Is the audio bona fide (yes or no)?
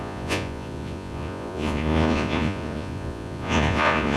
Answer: no